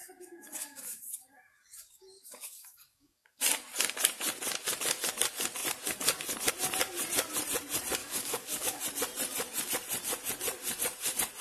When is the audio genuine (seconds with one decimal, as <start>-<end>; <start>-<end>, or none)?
3.4-8.0; 8.8-11.4